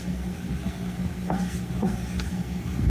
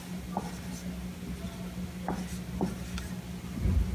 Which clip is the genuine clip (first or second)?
second